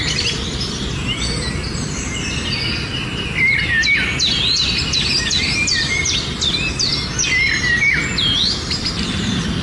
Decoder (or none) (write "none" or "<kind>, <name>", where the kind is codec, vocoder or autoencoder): none